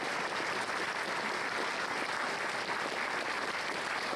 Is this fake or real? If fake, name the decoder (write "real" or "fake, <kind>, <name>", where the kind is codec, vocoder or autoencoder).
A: real